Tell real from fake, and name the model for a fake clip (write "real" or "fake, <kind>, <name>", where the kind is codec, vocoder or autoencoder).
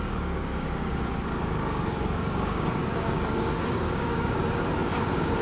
fake, codec, DAC